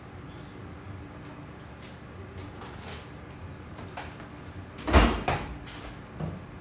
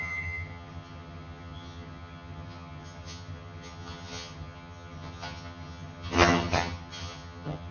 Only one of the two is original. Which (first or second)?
first